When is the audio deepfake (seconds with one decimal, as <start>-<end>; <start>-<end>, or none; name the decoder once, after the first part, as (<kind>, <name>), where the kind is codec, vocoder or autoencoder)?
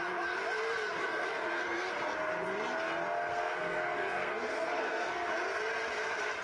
1.0-1.9 (codec, SNAC); 3.3-5.3